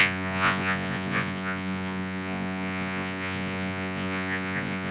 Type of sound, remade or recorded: remade